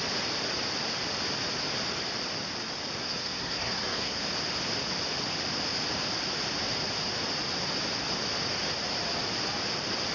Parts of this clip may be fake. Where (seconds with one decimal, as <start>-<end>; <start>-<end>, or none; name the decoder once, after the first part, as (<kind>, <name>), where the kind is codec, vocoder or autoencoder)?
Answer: 3.0-4.2 (codec, SNAC)